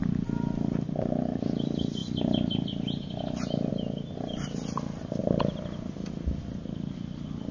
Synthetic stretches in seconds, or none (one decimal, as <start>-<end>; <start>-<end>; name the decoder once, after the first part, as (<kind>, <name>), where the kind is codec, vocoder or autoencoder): none